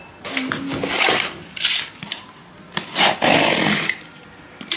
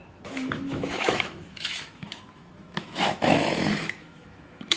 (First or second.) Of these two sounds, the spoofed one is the second